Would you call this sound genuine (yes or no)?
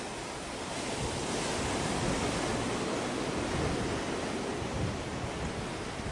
yes